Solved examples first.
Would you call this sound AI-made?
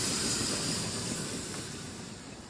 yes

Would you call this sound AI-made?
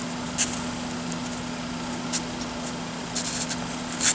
no